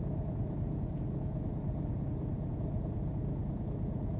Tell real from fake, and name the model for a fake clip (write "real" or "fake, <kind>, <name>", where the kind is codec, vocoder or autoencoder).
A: fake, vocoder, Vocos